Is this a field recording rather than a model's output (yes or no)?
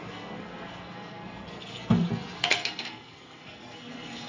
no